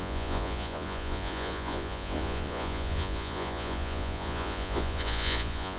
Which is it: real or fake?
fake